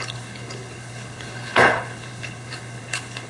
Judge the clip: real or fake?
fake